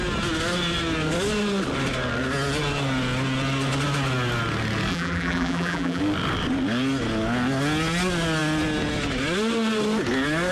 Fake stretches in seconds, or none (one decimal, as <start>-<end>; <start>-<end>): 4.9-6.0